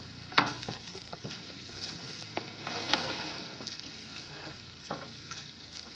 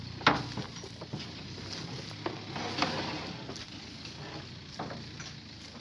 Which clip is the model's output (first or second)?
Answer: first